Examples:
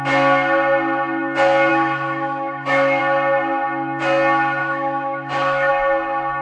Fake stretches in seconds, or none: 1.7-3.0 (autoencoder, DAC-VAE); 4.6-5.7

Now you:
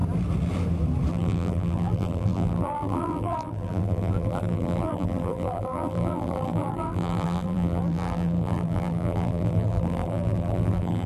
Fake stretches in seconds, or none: 1.1-11.1 (vocoder, BigVGAN v2)

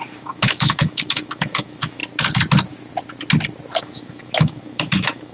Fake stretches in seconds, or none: 0.0-2.0 (autoencoder, DAC-VAE); 3.8-5.3

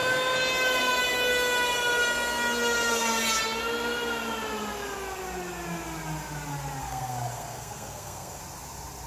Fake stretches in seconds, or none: 6.8-8.4 (codec, SNAC)

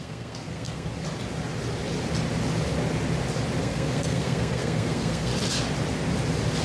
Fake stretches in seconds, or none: 0.0-0.9 (codec, SNAC); 3.6-5.3